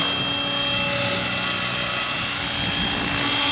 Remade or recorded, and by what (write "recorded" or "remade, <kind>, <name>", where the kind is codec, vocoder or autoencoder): recorded